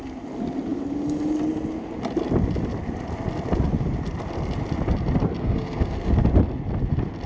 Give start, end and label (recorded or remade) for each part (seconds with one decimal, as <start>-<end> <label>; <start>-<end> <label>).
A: 0.0-5.4 recorded; 5.4-6.1 remade; 6.1-7.3 recorded

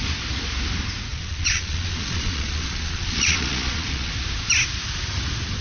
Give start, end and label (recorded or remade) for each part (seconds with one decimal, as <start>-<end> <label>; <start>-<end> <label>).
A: 0.0-1.1 recorded; 1.1-4.1 remade; 4.1-5.6 recorded

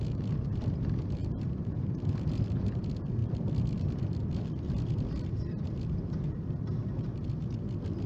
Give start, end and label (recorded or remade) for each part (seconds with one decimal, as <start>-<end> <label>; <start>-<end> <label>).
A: 0.0-8.1 remade

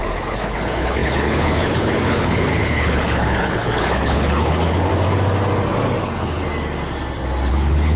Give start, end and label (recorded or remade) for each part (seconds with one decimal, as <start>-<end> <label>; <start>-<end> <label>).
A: 0.0-4.9 remade; 4.9-6.0 recorded; 6.0-6.4 remade; 6.4-7.5 recorded; 7.5-8.0 remade

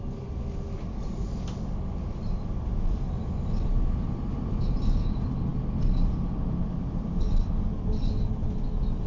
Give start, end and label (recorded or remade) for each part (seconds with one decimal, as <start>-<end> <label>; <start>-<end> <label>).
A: 0.0-9.1 recorded